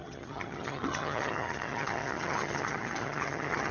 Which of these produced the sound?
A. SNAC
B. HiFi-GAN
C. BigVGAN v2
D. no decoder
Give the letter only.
B